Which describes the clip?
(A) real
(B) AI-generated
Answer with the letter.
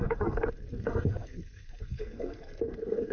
B